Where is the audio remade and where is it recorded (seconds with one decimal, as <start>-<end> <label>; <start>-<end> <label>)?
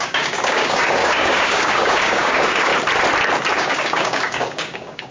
0.0-2.7 remade; 2.7-3.5 recorded; 3.5-5.1 remade